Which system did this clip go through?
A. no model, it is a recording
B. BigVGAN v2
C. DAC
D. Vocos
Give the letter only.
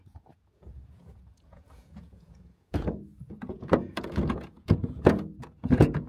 D